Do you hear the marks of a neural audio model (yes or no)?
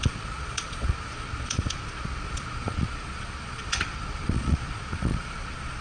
yes